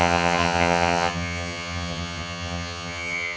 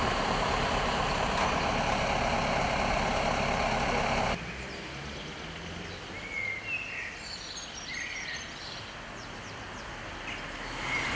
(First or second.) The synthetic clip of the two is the first